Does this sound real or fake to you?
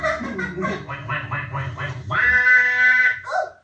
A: real